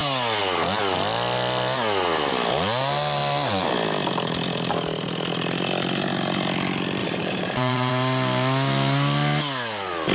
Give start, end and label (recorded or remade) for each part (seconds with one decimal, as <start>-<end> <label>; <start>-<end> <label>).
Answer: 0.0-7.0 recorded; 7.0-7.9 remade; 7.9-10.1 recorded